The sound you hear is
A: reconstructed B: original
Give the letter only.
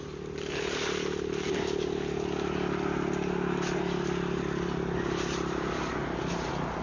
B